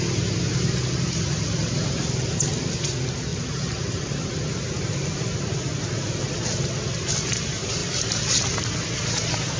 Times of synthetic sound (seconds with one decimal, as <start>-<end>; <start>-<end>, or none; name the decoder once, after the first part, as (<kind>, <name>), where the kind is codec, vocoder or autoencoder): none